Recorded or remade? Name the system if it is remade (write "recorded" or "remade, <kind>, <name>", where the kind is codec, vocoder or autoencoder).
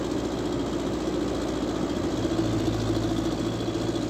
recorded